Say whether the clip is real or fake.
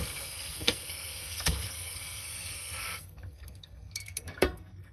fake